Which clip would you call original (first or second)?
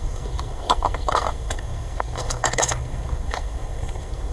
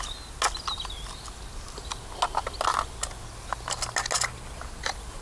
second